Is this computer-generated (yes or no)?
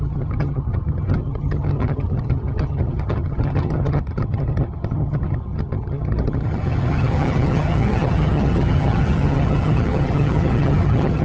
yes